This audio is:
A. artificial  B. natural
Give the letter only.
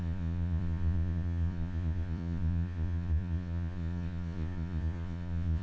A